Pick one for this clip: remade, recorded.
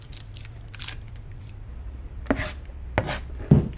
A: recorded